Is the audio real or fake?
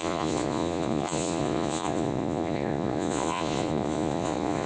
fake